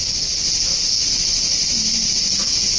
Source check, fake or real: real